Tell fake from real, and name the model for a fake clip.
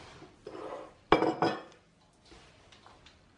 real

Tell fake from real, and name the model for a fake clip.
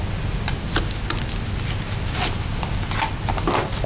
real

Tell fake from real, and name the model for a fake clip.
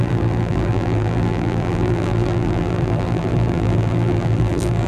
fake, vocoder, BigVGAN v2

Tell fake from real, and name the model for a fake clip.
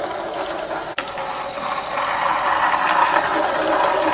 real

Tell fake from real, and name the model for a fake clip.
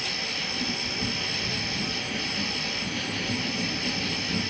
real